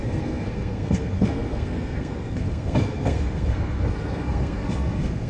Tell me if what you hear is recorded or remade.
remade